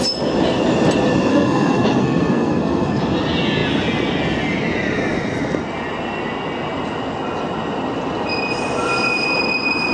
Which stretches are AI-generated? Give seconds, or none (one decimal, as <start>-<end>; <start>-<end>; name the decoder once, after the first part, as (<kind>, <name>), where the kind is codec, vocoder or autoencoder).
1.3-3.0 (codec, SNAC)